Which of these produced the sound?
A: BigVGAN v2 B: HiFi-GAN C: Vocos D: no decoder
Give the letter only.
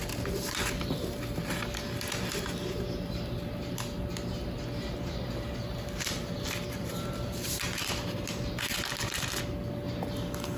D